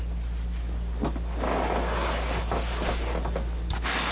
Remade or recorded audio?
recorded